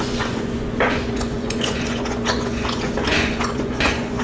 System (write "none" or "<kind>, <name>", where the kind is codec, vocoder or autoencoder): vocoder, Vocos